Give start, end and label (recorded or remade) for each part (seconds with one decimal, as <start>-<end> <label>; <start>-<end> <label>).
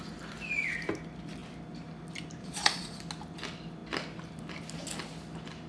0.0-2.4 recorded; 2.4-3.0 remade; 3.0-5.7 recorded